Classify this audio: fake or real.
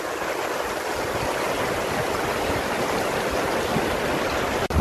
real